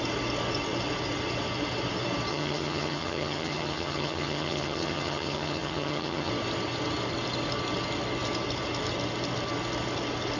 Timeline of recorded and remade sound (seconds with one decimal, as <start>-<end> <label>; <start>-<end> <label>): 0.0-2.3 recorded; 2.3-6.3 remade; 6.3-10.4 recorded